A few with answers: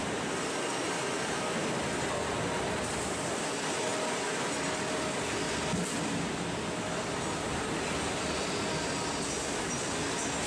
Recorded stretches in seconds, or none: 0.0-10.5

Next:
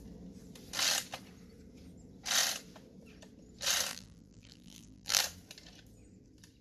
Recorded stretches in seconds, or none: 0.0-3.9; 5.2-6.6